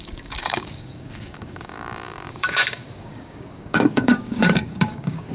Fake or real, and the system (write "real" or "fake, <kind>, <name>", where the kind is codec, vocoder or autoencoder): fake, codec, DAC